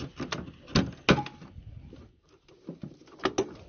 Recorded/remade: recorded